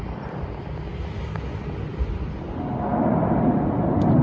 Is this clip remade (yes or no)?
no